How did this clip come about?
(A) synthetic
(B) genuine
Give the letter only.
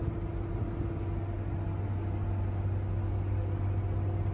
B